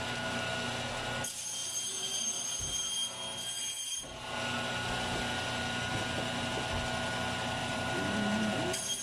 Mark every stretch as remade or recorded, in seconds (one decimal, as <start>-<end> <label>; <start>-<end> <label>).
0.0-7.6 recorded; 7.6-9.0 remade